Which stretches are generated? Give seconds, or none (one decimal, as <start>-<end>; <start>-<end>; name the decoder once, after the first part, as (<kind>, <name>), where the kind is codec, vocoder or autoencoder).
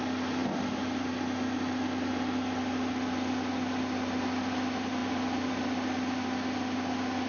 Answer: none